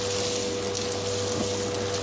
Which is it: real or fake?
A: real